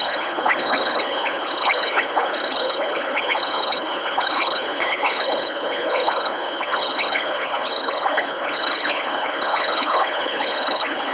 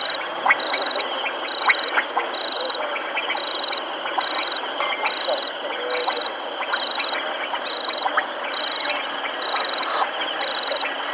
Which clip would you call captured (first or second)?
second